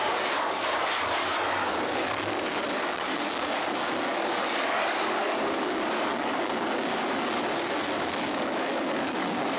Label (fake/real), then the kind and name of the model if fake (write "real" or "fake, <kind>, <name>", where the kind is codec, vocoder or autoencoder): fake, codec, DAC